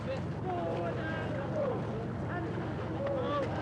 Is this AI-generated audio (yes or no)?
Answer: no